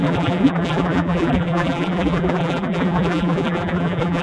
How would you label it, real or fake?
fake